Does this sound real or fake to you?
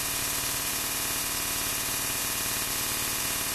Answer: real